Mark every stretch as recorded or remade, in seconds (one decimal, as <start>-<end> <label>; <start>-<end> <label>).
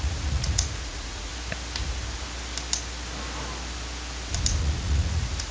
0.0-1.3 remade; 1.3-4.6 recorded; 4.6-5.5 remade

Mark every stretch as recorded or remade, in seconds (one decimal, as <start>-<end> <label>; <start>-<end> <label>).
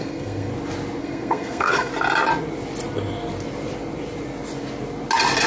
0.0-0.5 remade; 0.5-1.0 recorded; 1.0-1.9 remade; 1.9-5.5 recorded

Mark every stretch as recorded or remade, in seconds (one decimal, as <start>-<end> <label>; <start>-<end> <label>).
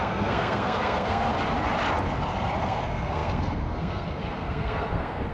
0.0-1.3 remade; 1.3-2.6 recorded; 2.6-5.3 remade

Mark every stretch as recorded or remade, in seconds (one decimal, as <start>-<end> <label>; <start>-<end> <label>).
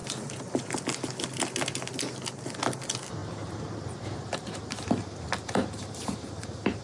0.0-0.8 remade; 0.8-3.2 recorded; 3.2-6.8 remade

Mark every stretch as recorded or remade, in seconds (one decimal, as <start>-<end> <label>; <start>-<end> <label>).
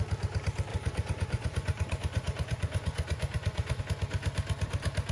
0.0-0.7 recorded; 0.7-3.8 remade; 3.8-5.1 recorded